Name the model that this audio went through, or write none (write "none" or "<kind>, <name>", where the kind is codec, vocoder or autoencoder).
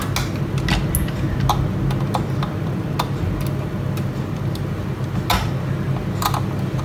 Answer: none